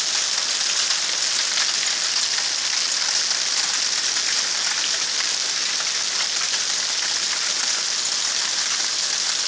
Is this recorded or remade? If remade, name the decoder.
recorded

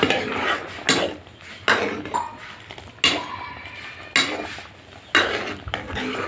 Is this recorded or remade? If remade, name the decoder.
recorded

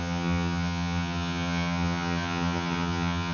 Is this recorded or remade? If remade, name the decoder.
remade, vocoder, HiFi-GAN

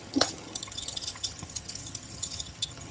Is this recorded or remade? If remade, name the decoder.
remade, vocoder, HiFi-GAN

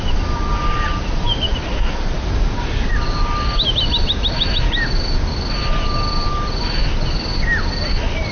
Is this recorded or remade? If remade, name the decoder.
recorded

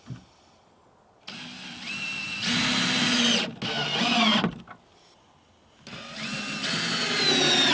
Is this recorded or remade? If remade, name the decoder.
recorded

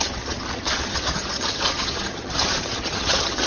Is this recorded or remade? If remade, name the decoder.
remade, vocoder, HiFi-GAN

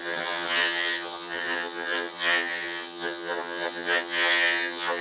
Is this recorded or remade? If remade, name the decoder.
remade, vocoder, HiFi-GAN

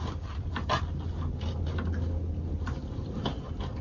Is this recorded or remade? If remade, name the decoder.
recorded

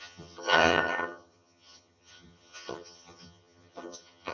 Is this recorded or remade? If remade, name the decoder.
remade, vocoder, HiFi-GAN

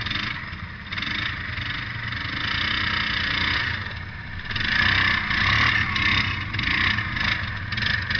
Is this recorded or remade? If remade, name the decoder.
recorded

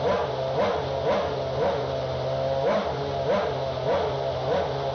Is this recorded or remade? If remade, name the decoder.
recorded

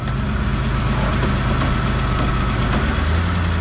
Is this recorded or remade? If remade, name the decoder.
recorded